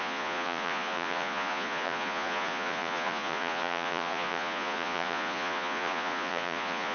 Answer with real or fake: fake